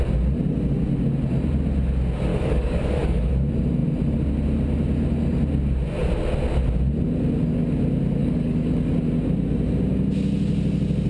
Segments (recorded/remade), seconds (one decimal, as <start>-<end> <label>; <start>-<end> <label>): 0.0-2.3 recorded; 2.3-3.3 remade; 3.3-8.2 recorded; 8.2-8.9 remade; 8.9-11.1 recorded